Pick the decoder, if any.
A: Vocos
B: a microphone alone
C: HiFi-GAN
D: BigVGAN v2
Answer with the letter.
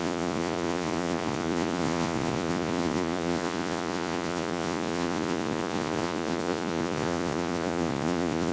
A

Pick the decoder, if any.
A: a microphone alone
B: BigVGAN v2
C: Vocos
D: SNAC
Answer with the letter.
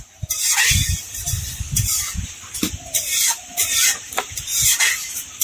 A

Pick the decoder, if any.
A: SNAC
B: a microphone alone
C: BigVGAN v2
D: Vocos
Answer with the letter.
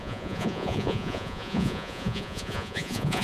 D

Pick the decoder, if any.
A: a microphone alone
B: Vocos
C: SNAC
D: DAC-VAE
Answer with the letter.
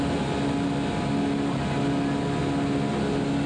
A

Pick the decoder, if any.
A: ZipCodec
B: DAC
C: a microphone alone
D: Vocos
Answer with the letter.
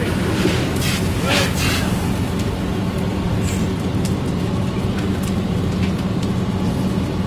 C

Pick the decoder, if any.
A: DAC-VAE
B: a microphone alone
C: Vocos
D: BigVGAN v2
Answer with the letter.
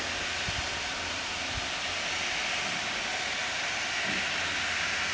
B